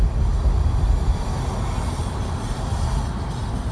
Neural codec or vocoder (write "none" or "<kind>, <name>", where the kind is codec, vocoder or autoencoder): none